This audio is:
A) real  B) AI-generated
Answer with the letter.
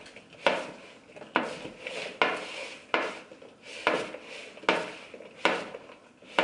A